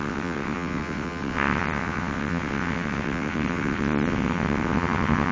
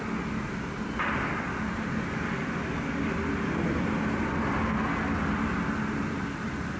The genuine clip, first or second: second